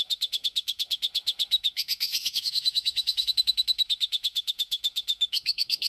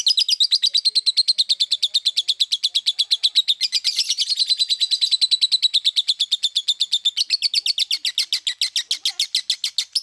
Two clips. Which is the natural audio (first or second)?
second